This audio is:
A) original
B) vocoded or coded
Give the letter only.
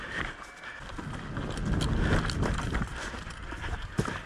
A